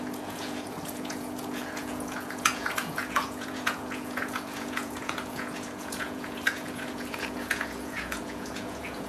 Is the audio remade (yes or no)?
yes